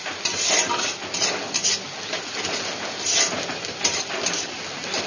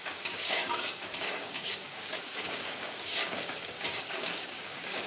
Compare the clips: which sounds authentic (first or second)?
first